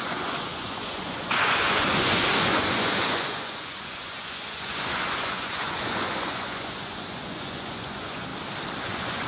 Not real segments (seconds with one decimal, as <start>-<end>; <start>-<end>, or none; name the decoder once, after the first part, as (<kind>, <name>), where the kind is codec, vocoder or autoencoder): 0.0-8.3 (vocoder, Vocos); 8.8-9.3